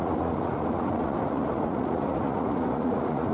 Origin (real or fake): fake